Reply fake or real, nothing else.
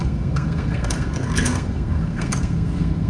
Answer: fake